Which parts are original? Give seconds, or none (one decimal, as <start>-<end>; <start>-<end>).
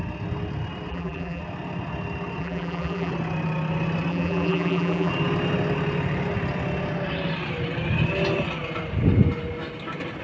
0.0-0.9; 1.4-2.4; 3.1-4.1; 5.1-10.2